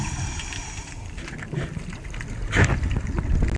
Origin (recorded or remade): recorded